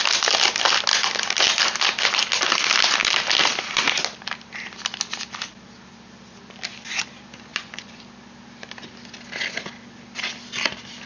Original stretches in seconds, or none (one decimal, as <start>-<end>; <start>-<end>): 0.0-7.5; 8.0-11.1

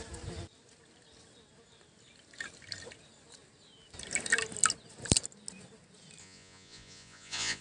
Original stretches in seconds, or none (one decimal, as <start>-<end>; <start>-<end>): 0.0-6.2

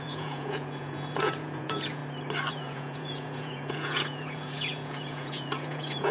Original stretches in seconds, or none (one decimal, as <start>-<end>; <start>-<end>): 2.0-2.5

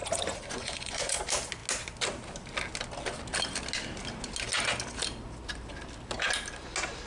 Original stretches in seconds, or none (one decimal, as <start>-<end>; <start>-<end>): 1.2-7.1

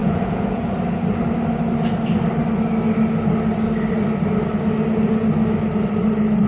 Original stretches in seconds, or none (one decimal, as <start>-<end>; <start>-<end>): 0.6-6.5

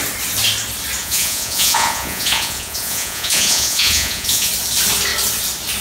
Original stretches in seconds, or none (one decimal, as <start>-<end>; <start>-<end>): 0.0-1.0; 4.5-5.8

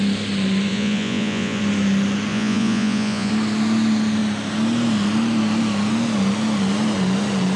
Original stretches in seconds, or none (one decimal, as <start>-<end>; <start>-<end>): 0.0-0.7; 1.6-2.3; 3.3-7.6

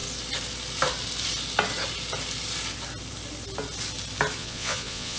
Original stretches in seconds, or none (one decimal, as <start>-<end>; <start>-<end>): 0.0-4.4